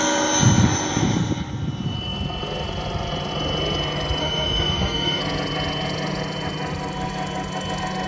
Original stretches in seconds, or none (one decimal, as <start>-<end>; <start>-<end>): 0.0-4.2; 5.2-8.1